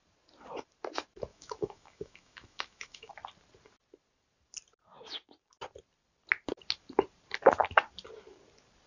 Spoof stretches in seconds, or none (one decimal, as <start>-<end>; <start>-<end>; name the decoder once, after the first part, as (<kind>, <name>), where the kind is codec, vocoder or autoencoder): 1.3-3.1 (autoencoder, DAC-VAE)